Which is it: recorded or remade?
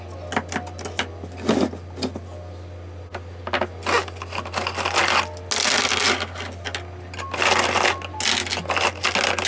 recorded